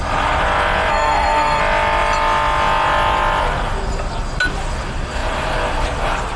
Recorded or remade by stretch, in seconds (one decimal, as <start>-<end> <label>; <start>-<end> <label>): 0.0-0.9 recorded; 0.9-1.6 remade; 1.6-6.4 recorded